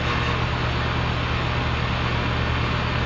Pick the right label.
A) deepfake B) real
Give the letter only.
B